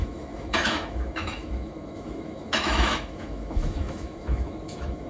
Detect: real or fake fake